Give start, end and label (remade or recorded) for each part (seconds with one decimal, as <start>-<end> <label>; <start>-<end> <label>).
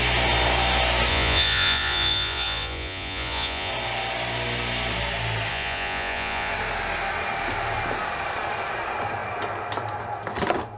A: 0.0-1.1 recorded; 1.1-3.7 remade; 3.7-5.5 recorded; 5.5-6.5 remade; 6.5-10.8 recorded